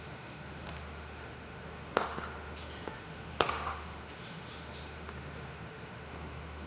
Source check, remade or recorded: remade